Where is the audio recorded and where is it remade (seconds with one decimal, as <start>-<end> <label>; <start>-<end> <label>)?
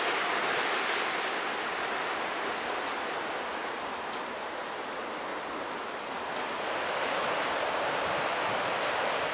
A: 0.0-9.3 recorded